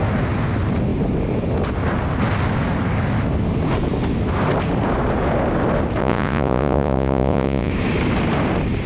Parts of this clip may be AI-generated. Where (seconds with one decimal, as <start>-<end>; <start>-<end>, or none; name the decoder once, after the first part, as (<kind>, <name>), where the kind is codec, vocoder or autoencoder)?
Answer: 6.0-7.7 (vocoder, Vocos)